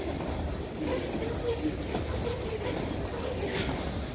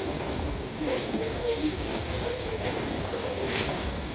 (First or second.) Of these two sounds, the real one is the first